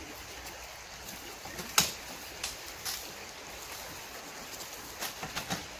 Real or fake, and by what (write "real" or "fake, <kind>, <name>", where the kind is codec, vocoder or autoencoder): real